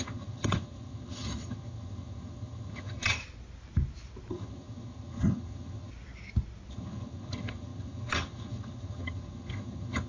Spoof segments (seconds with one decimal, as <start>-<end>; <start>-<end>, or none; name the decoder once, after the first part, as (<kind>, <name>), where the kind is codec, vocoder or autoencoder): 0.0-3.2 (vocoder, HiFi-GAN); 4.3-5.9; 6.7-10.1